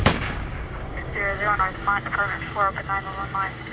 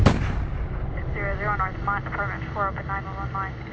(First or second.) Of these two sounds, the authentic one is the second